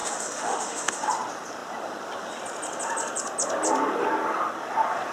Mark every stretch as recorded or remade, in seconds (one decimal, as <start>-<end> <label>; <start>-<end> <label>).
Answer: 0.0-1.1 remade; 1.1-5.1 recorded